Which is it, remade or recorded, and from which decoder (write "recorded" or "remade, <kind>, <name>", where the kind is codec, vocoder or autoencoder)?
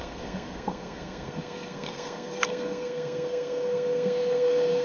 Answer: remade, codec, SNAC